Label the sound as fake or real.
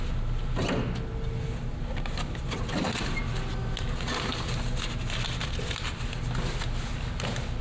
real